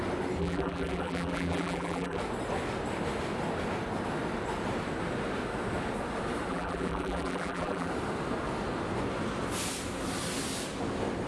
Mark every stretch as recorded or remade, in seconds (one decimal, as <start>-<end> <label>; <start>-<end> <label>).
0.0-0.4 recorded; 0.4-2.2 remade; 2.2-6.5 recorded; 6.5-7.9 remade; 7.9-11.3 recorded